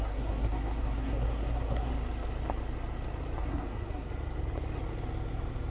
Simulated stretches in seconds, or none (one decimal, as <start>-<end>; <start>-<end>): 0.0-1.9; 3.4-4.1